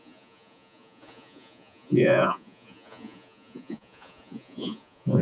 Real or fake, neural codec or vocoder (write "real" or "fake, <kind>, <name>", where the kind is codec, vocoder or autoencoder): fake, vocoder, Vocos